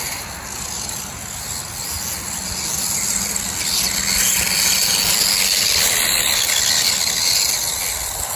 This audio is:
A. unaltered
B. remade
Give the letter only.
A